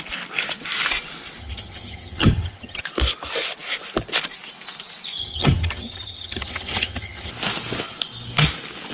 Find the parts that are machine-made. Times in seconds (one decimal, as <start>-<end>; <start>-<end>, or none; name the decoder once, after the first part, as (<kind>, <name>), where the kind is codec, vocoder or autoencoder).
1.4-2.8 (vocoder, HiFi-GAN); 5.2-7.3